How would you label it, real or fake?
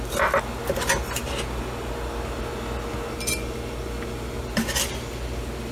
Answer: real